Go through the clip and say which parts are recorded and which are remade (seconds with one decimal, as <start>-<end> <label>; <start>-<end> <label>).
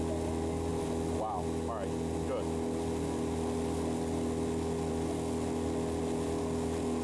0.0-7.0 recorded